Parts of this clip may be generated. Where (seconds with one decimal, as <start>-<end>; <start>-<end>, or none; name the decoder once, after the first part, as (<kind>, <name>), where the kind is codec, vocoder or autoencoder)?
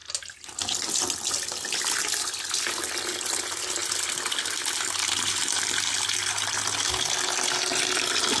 none